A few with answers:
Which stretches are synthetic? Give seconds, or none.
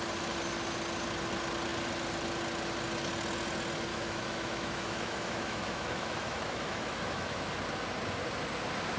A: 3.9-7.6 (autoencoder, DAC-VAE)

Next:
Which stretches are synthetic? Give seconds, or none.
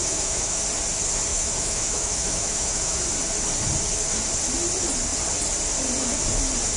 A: 0.0-0.6 (autoencoder, DAC-VAE); 1.3-3.0